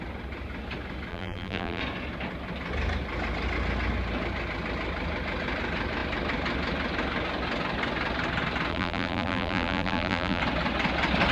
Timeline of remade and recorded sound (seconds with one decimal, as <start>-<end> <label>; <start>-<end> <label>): 0.0-1.1 recorded; 1.1-1.8 remade; 1.8-8.7 recorded; 8.7-10.4 remade; 10.4-11.3 recorded